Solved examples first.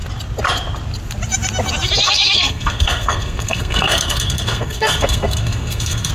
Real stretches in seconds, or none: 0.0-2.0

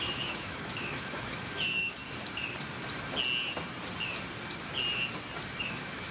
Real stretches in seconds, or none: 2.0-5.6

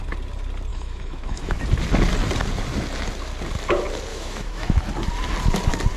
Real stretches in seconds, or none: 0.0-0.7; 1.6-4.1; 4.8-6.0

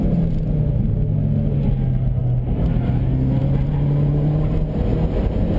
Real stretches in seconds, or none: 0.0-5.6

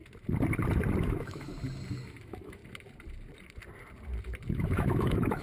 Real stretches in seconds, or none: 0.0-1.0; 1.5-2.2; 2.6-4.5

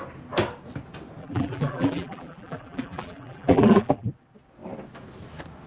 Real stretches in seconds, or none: 0.0-1.2; 4.1-5.7

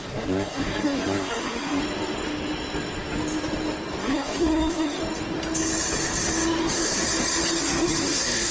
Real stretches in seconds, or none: 1.8-4.0; 5.0-6.6; 7.0-7.6

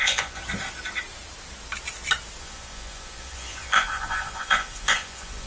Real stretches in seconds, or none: 0.4-2.4